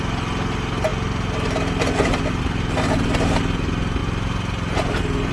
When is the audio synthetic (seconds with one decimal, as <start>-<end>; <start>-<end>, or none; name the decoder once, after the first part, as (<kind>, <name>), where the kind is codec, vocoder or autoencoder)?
none

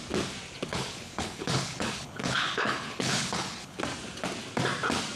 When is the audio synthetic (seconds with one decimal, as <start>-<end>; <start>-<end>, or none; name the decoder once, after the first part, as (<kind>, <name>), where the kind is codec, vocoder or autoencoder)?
0.7-3.8 (codec, HILCodec)

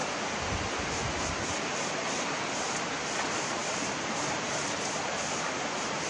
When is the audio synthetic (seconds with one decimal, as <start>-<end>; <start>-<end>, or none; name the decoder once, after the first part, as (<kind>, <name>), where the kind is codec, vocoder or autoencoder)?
3.2-6.1 (vocoder, BigVGAN v2)

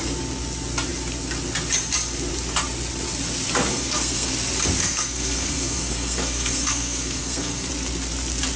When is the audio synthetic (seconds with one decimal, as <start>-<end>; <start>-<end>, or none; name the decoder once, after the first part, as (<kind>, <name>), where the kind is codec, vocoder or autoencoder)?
3.7-4.3 (codec, SNAC); 4.8-7.7

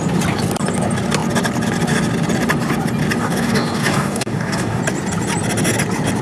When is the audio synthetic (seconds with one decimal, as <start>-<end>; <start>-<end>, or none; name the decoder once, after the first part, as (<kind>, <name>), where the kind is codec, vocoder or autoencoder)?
3.2-4.8 (codec, DAC)

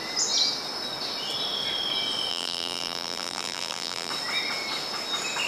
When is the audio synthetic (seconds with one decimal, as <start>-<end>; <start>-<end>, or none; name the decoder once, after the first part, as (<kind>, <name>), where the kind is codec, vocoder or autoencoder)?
2.3-4.1 (vocoder, BigVGAN v2)

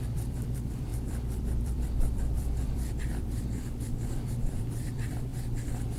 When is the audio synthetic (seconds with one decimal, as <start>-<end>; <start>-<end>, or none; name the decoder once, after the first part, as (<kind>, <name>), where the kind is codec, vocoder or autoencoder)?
0.0-5.3 (vocoder, BigVGAN v2)